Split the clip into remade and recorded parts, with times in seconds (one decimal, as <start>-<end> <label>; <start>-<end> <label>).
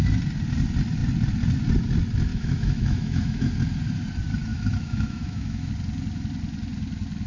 0.0-2.3 recorded; 2.3-3.5 remade; 3.5-4.5 recorded; 4.5-5.7 remade; 5.7-7.3 recorded